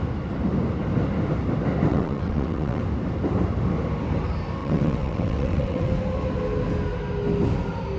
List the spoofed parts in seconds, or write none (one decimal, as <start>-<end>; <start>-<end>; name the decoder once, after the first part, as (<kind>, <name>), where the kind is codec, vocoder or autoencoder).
1.9-2.8 (vocoder, WaveNeXt); 4.6-5.9